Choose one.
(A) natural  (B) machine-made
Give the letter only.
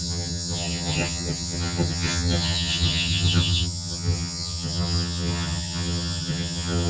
B